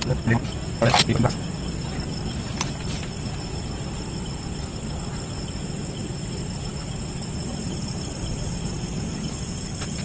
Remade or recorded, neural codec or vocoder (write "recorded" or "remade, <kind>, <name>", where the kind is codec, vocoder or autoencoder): recorded